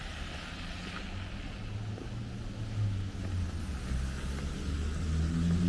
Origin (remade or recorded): recorded